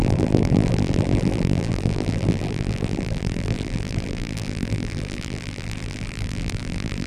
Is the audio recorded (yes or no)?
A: no